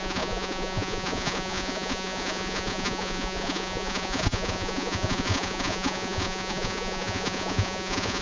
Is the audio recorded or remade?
remade